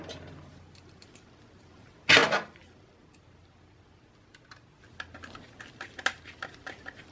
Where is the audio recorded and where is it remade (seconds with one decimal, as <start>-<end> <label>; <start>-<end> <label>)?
0.0-7.1 recorded